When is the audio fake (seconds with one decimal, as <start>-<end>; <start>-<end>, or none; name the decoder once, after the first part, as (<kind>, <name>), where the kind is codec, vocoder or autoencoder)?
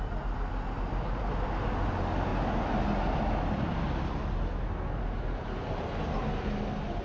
none